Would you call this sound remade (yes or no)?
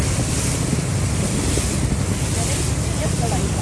no